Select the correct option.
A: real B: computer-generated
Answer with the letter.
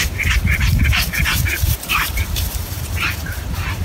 B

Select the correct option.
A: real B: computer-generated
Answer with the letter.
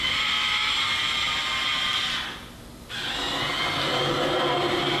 A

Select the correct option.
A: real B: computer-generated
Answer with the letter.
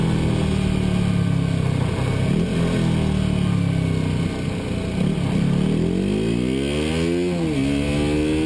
A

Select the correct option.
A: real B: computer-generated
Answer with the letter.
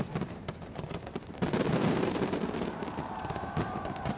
B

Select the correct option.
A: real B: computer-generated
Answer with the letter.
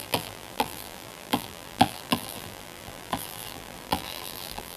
B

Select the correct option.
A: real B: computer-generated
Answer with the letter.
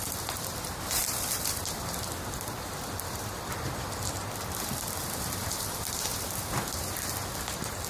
B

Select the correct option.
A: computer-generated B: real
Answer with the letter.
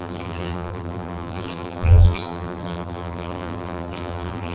A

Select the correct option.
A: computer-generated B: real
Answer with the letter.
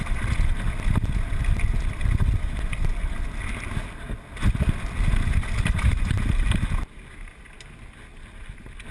B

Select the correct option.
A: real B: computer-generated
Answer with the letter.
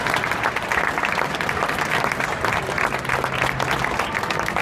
A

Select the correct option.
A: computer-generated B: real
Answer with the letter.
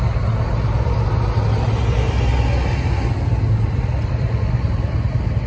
B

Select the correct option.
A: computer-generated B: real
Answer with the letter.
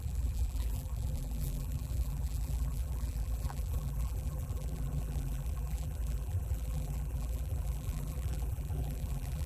A